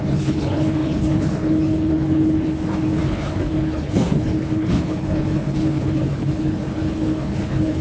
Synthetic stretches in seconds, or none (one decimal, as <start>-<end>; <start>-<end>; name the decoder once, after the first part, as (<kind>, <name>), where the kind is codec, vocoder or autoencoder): 0.0-7.8 (codec, HILCodec)